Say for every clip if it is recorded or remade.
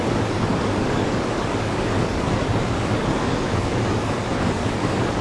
remade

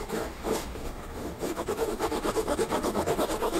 remade